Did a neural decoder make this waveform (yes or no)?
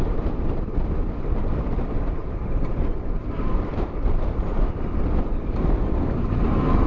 no